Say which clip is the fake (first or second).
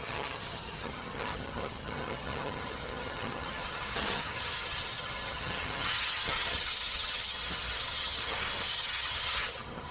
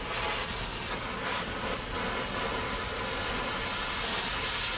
first